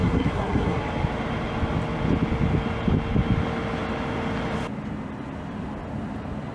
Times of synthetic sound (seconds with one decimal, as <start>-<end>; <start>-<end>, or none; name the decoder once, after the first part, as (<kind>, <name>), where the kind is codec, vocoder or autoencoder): 0.0-0.8 (codec, SNAC)